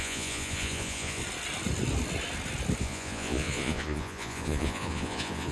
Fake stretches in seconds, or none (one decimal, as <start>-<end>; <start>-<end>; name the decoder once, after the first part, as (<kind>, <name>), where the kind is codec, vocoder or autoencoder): 0.0-1.2 (vocoder, Vocos); 2.8-5.5